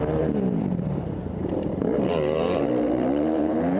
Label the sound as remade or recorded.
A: remade